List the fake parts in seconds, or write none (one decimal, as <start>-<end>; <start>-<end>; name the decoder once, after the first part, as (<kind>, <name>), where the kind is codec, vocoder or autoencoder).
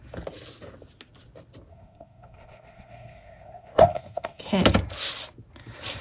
1.7-4.4 (codec, SNAC)